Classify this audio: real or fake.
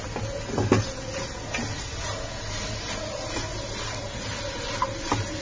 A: real